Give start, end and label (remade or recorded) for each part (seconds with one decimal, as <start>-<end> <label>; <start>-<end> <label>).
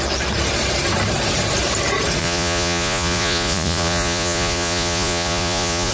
0.0-2.2 recorded; 2.2-5.9 remade